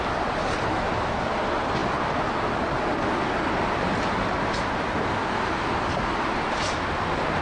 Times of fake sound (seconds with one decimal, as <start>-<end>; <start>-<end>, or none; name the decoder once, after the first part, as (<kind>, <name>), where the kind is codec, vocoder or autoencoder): none